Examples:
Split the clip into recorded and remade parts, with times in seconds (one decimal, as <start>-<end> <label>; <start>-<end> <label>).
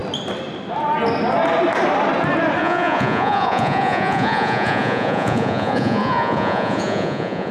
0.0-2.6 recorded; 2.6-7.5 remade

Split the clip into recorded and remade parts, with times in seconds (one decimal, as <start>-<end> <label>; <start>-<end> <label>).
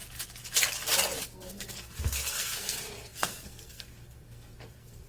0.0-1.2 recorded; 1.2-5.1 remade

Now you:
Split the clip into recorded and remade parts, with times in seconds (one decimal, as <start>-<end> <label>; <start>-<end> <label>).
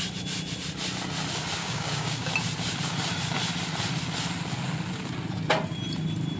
0.0-1.6 recorded; 1.6-2.3 remade; 2.3-6.4 recorded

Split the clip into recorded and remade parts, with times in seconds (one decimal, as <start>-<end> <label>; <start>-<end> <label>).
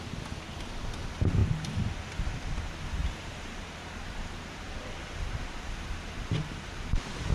0.0-3.0 recorded; 3.0-7.3 remade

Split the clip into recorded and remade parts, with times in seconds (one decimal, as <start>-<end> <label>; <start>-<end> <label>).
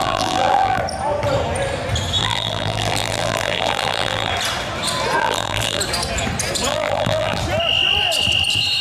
0.0-0.8 remade; 0.8-2.2 recorded; 2.2-4.3 remade; 4.3-5.2 recorded; 5.2-5.8 remade; 5.8-6.7 recorded; 6.7-7.4 remade; 7.4-8.8 recorded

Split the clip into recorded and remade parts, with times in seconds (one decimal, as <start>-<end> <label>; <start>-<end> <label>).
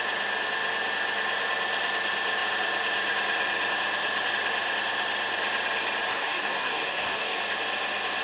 0.0-6.1 recorded; 6.1-7.4 remade; 7.4-8.2 recorded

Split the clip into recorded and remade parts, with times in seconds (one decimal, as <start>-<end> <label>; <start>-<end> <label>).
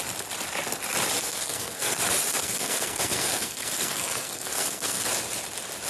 0.0-1.2 recorded; 1.2-2.0 remade; 2.0-2.4 recorded; 2.4-5.1 remade; 5.1-5.9 recorded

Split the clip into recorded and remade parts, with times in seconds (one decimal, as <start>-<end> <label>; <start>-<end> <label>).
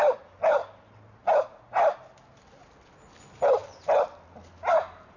0.0-5.2 recorded